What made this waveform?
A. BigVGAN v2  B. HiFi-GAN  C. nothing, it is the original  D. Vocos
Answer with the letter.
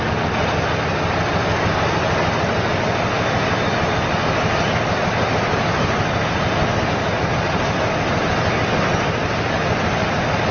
C